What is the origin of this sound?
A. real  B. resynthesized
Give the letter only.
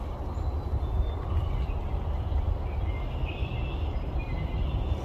A